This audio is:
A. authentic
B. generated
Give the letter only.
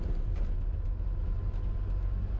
A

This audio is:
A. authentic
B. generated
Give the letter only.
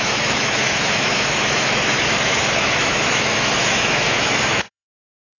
B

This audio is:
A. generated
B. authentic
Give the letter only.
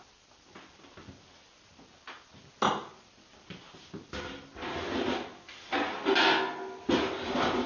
B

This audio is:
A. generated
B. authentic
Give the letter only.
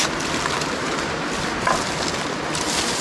B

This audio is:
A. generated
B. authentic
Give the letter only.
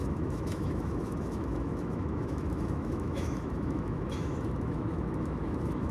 A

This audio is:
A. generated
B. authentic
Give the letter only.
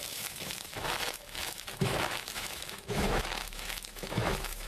A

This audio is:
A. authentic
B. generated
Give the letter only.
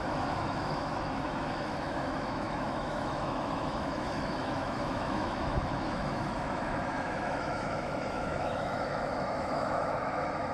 B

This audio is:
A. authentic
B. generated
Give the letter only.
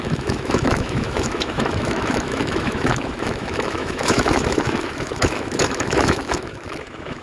B